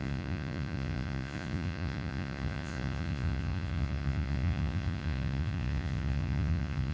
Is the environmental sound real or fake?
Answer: fake